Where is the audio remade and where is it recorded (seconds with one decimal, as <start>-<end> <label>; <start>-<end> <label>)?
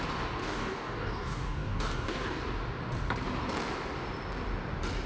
0.0-0.4 recorded; 0.4-2.4 remade; 2.4-5.1 recorded